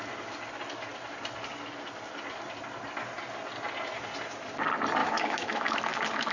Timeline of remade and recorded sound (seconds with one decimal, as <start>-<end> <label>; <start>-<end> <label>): 0.0-5.0 recorded; 5.0-6.3 remade